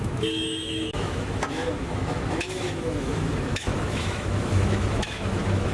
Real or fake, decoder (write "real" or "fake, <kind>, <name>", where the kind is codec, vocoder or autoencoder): fake, autoencoder, DAC-VAE